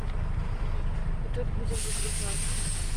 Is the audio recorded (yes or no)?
yes